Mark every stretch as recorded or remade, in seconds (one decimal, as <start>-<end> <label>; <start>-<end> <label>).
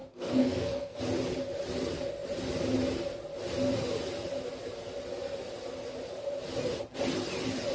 0.0-1.0 remade; 1.0-7.7 recorded